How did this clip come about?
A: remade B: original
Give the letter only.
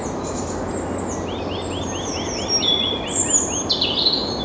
B